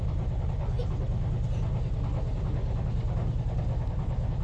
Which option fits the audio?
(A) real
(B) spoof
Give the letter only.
A